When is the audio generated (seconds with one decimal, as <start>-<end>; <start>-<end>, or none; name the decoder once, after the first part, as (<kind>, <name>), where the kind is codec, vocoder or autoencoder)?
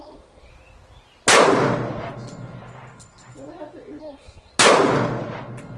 0.0-0.5 (codec, SNAC); 4.0-4.5